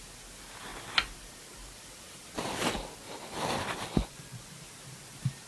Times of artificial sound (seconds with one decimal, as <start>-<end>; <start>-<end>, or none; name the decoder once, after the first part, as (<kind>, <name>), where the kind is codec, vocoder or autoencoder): 3.9-4.6 (vocoder, Vocos)